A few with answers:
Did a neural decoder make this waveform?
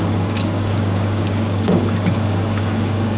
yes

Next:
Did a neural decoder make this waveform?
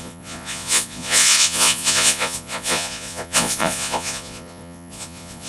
yes